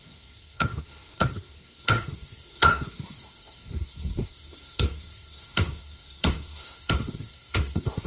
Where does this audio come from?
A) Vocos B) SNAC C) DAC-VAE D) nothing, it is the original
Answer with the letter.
B